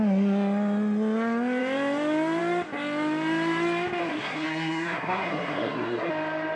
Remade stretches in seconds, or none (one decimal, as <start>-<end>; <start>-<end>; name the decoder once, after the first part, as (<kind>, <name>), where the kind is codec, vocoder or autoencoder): 4.0-6.1 (codec, SNAC)